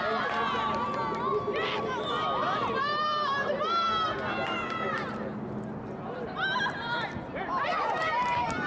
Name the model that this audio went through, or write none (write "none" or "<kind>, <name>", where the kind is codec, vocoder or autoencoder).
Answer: none